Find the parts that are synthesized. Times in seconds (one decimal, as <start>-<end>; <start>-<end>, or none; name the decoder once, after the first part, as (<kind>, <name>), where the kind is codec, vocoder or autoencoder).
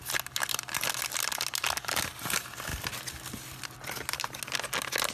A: none